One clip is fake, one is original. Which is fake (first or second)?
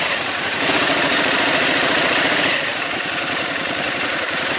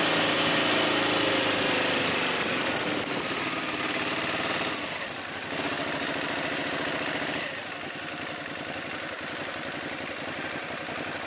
first